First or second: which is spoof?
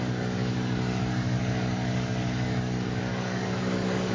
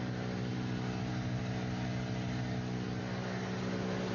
first